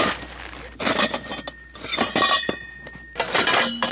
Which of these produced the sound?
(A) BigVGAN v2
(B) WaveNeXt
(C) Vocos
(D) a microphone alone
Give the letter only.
D